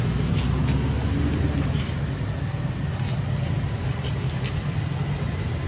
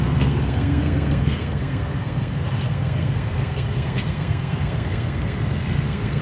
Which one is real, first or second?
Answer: first